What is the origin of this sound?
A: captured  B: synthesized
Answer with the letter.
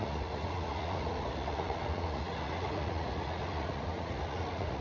B